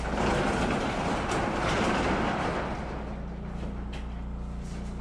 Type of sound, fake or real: real